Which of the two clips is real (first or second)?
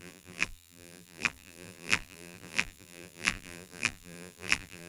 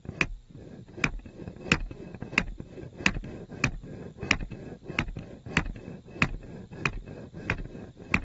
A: second